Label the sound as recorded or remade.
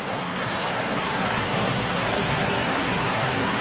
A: remade